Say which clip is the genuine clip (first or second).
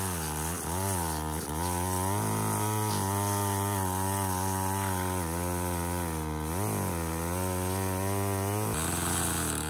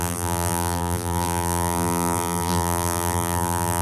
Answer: first